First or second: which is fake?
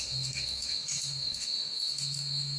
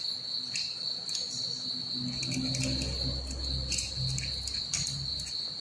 first